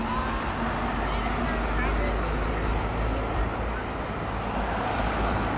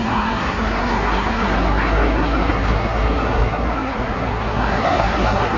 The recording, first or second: first